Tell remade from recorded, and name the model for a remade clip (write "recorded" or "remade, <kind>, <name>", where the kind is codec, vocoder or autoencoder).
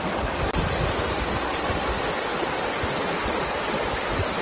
recorded